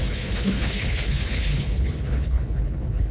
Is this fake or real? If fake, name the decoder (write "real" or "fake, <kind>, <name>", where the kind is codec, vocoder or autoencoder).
fake, codec, HILCodec